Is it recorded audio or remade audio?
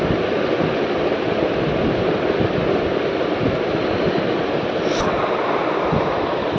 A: recorded